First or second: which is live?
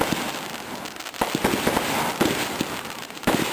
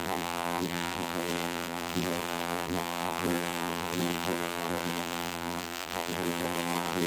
first